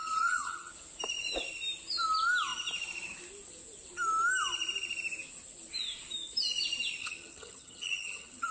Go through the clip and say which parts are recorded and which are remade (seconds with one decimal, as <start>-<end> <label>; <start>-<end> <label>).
0.0-0.7 remade; 0.7-7.0 recorded; 7.0-8.5 remade